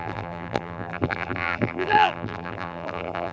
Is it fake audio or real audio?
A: fake